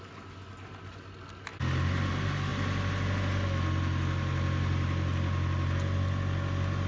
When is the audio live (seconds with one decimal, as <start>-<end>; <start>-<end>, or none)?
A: 0.0-6.9